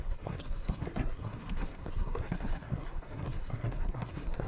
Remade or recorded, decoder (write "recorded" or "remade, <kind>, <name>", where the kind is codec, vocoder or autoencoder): remade, codec, SNAC